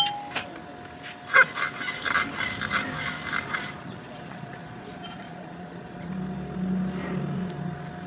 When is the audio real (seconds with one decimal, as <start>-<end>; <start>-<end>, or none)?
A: 0.0-3.8; 6.1-8.1